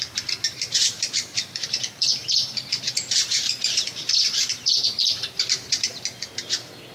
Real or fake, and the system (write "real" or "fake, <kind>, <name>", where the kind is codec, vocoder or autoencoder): fake, vocoder, BigVGAN v2